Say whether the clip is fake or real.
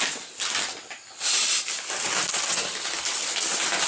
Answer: real